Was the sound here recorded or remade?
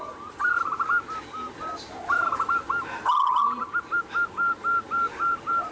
remade